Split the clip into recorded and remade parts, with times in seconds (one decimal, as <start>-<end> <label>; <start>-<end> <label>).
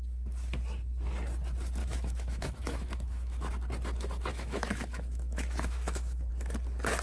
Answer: 0.0-1.8 recorded; 1.8-3.5 remade; 3.5-4.3 recorded; 4.3-6.3 remade; 6.3-7.0 recorded